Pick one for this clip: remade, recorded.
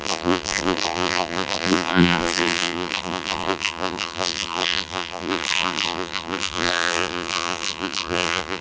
remade